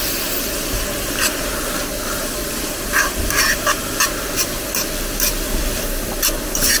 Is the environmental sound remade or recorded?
recorded